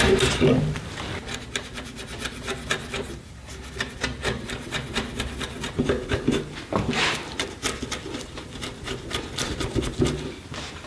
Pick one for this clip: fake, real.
real